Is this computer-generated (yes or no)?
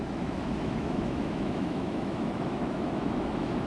yes